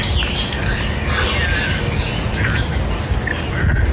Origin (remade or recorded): recorded